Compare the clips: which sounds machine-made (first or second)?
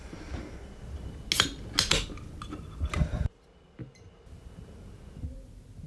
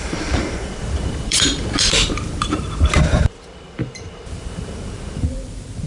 second